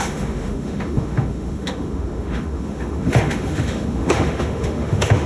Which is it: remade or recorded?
remade